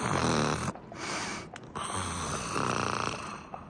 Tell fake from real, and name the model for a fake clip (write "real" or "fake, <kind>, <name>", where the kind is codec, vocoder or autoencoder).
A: real